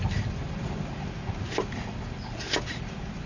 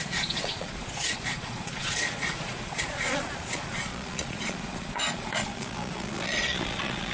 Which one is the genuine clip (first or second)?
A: first